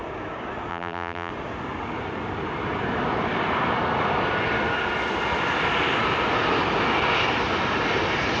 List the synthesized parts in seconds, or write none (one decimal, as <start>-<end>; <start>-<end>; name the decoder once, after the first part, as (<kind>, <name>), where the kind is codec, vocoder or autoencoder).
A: 0.7-1.3 (vocoder, BigVGAN v2)